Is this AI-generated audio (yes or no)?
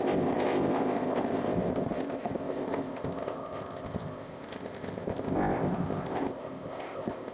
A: yes